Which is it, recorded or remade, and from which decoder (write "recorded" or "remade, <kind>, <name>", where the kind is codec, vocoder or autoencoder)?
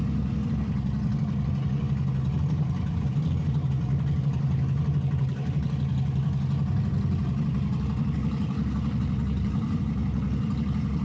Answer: recorded